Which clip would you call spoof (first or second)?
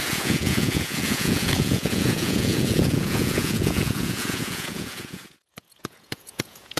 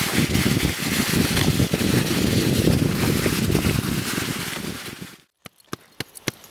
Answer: first